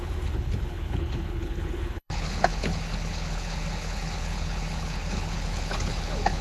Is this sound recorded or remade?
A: remade